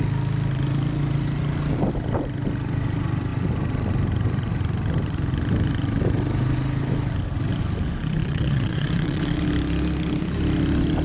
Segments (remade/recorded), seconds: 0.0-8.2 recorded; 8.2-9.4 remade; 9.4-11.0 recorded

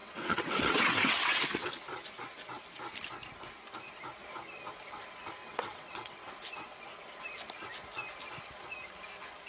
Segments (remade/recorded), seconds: 0.0-1.7 remade; 1.7-5.4 recorded; 5.4-6.3 remade; 6.3-9.5 recorded

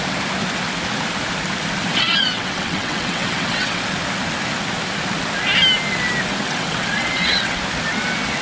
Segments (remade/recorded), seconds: 0.0-1.9 recorded; 1.9-3.8 remade; 3.8-6.3 recorded; 6.3-7.6 remade; 7.6-8.4 recorded

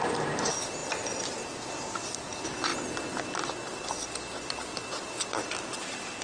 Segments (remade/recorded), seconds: 0.0-6.2 recorded